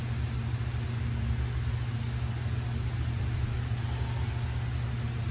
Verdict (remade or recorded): recorded